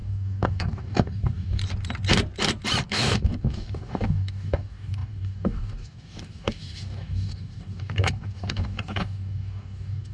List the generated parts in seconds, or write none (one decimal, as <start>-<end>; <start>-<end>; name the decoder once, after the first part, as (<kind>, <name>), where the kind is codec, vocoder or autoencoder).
0.0-1.6 (codec, DAC); 2.9-10.1